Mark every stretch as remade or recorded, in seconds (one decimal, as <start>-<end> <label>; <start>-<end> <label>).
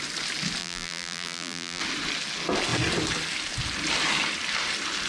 0.0-0.6 recorded; 0.6-1.8 remade; 1.8-5.1 recorded